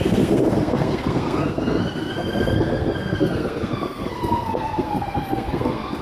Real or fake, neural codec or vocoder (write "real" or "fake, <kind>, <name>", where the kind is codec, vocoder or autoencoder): fake, codec, SNAC